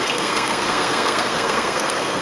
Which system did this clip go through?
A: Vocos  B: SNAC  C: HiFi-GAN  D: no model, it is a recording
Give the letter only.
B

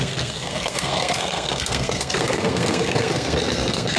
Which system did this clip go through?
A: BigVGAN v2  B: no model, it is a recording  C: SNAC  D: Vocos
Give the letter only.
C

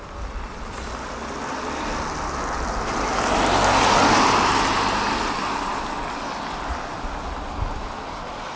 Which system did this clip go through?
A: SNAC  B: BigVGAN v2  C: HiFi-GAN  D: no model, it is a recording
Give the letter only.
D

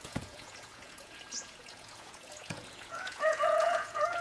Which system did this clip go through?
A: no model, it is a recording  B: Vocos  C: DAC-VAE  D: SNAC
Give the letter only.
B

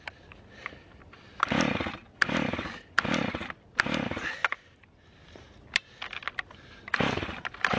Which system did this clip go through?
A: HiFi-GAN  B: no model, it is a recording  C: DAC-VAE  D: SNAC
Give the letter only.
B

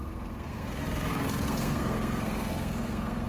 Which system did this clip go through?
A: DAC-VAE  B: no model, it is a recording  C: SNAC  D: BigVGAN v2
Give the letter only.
C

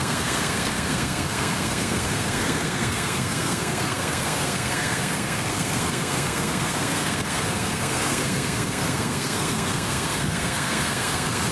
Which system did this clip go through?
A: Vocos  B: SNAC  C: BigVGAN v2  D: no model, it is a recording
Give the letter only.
B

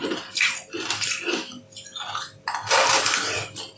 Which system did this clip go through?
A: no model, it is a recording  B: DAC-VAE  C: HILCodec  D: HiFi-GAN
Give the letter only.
A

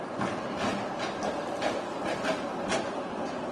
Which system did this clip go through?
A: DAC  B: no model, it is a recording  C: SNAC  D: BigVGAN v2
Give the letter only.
B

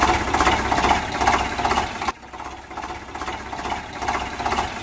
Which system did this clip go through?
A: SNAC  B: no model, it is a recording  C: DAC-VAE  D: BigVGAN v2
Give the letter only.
B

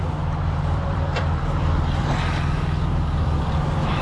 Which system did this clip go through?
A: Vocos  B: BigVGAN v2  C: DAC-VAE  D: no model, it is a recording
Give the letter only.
B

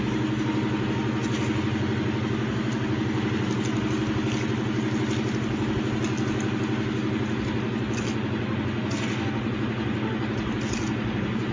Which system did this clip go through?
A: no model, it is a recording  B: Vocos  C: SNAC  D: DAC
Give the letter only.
A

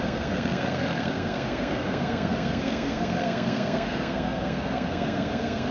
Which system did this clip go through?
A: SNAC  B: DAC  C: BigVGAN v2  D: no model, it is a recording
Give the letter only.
A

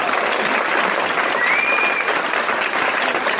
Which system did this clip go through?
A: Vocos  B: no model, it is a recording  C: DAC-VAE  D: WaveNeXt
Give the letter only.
B